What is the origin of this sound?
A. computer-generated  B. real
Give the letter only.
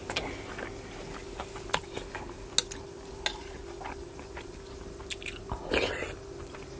B